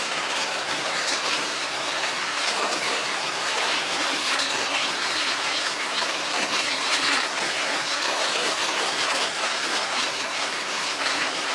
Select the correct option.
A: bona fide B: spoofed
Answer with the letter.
B